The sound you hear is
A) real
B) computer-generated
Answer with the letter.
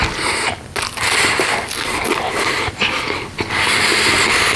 A